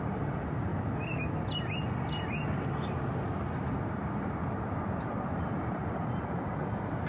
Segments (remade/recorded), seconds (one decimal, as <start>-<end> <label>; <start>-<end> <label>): 0.0-0.7 remade; 0.7-5.0 recorded; 5.0-7.1 remade